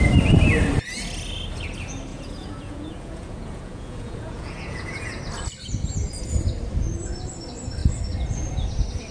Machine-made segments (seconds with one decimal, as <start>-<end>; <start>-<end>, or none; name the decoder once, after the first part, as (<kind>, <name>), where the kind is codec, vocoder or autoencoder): 2.1-5.2 (vocoder, Vocos)